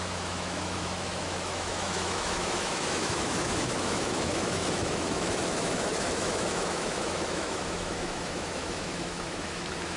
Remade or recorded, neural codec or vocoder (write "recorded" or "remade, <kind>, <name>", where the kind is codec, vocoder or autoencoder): remade, autoencoder, DAC-VAE